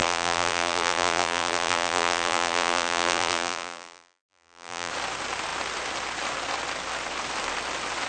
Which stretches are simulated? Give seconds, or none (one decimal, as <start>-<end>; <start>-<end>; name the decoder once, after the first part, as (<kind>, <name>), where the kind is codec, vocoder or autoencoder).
0.0-4.9 (vocoder, BigVGAN v2)